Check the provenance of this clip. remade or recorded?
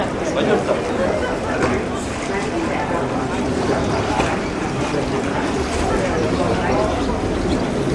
recorded